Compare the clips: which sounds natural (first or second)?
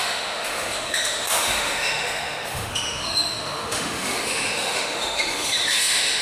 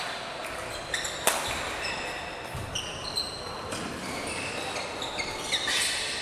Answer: second